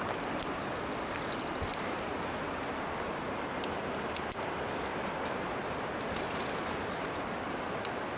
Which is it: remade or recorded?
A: recorded